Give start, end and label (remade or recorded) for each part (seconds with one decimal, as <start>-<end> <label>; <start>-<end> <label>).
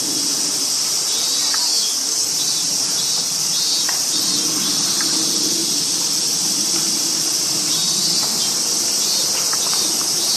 0.0-1.7 recorded; 1.7-2.3 remade; 2.3-10.4 recorded